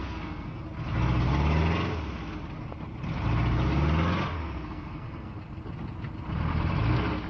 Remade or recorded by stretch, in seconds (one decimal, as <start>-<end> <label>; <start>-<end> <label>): 0.0-0.6 remade; 0.6-4.3 recorded; 4.3-5.4 remade; 5.4-7.3 recorded

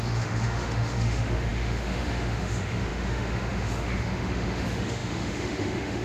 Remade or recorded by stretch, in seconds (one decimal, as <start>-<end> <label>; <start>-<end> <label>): 0.0-6.0 remade

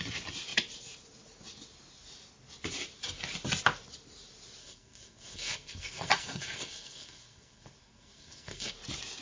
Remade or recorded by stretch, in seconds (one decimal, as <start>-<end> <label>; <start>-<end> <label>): 0.0-4.6 recorded; 4.6-8.7 remade; 8.7-9.2 recorded

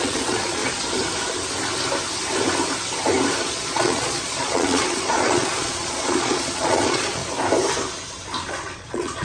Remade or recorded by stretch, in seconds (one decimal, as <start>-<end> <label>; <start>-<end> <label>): 0.0-0.6 remade; 0.6-3.4 recorded; 3.4-7.2 remade; 7.2-8.5 recorded; 8.5-9.2 remade

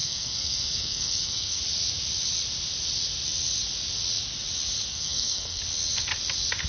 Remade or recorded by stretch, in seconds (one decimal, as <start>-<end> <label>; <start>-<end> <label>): 0.0-1.6 remade; 1.6-4.9 recorded; 4.9-5.6 remade; 5.6-6.7 recorded

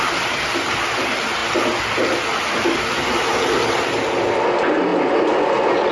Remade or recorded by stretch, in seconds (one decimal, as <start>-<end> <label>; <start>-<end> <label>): 0.0-5.9 recorded

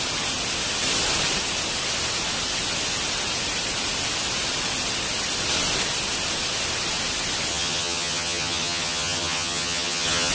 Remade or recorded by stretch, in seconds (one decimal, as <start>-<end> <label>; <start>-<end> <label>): 0.0-7.5 recorded; 7.5-10.3 remade

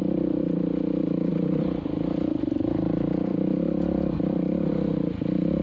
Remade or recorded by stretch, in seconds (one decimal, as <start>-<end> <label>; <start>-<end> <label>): 0.0-1.3 recorded; 1.3-4.7 remade; 4.7-5.6 recorded